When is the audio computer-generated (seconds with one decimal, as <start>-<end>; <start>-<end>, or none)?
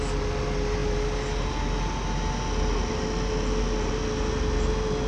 none